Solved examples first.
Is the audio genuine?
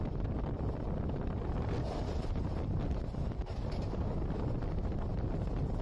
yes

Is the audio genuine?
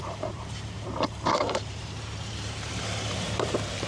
no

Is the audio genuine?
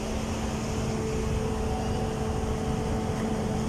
yes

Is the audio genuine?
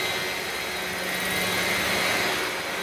yes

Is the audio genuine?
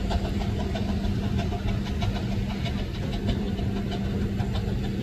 yes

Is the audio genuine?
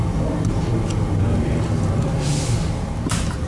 yes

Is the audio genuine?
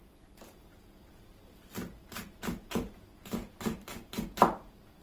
no